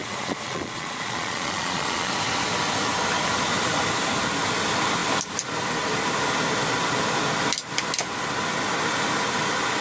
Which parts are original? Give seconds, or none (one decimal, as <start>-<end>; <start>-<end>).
2.1-9.8